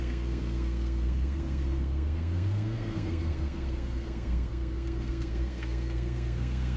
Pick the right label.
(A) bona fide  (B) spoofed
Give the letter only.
B